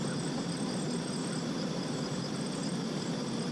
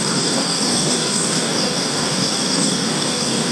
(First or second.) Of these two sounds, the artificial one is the second